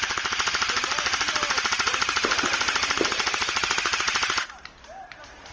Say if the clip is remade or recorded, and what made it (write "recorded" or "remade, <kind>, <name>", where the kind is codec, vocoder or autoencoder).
remade, vocoder, BigVGAN v2